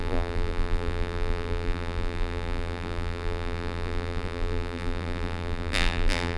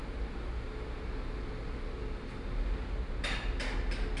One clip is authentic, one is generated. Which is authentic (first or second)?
second